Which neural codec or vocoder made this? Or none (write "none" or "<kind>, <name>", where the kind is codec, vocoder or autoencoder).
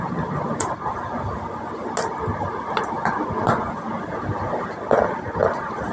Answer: none